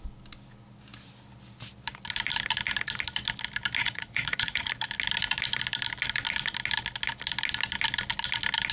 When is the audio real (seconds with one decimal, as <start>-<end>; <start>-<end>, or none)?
0.0-3.8; 4.7-8.7